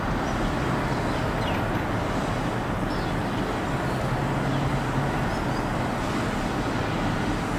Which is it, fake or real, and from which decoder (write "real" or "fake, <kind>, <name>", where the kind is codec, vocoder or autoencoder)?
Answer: real